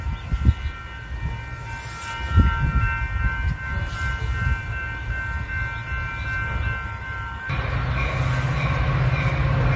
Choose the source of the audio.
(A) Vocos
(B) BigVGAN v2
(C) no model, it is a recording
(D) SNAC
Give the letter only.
C